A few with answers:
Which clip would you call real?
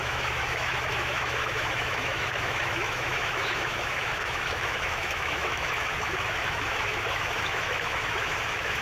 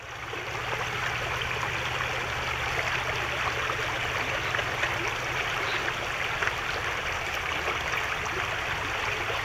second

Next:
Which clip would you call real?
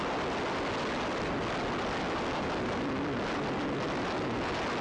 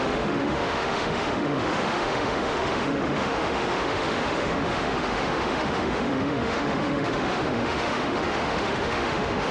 first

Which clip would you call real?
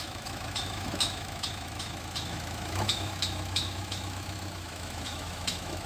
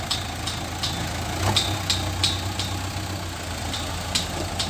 second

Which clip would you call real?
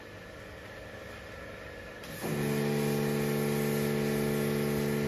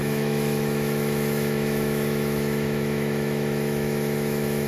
first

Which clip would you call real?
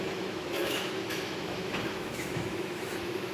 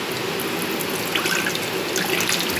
second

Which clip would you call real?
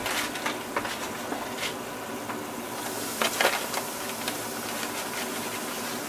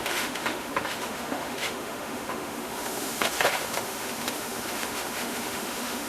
first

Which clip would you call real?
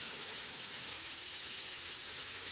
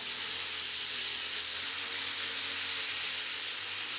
second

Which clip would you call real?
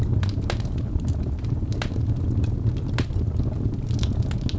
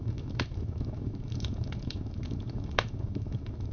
first